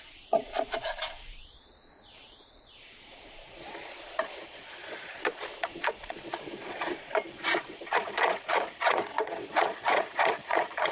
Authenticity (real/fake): fake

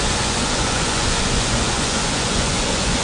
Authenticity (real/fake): fake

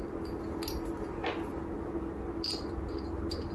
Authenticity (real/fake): real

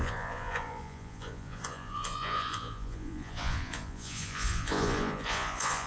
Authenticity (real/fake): fake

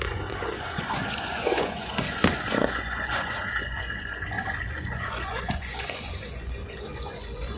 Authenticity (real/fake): fake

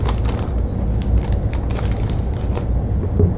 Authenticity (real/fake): real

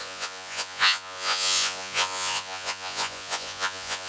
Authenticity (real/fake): fake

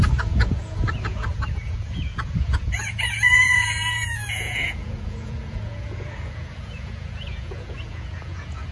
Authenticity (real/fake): fake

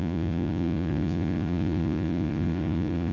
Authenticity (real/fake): fake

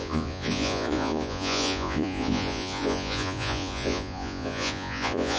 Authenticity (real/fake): fake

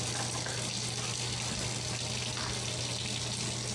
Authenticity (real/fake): real